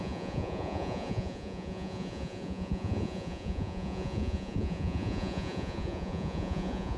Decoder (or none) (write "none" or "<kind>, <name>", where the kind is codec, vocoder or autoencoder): vocoder, Vocos